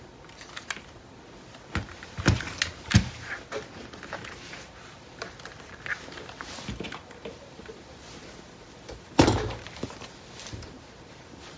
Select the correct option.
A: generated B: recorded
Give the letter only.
B